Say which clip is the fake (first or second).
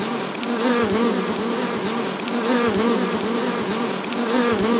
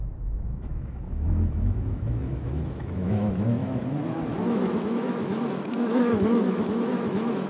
second